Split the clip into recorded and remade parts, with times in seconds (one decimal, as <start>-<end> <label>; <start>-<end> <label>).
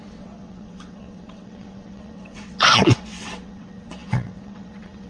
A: 0.0-5.1 remade